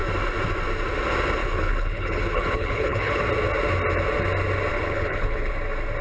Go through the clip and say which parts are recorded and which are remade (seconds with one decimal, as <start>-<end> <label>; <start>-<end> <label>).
0.0-1.4 recorded; 1.4-3.2 remade; 3.2-4.7 recorded; 4.7-5.5 remade; 5.5-6.0 recorded